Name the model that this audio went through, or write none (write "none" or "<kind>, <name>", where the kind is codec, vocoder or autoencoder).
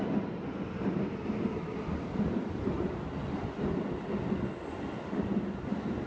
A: none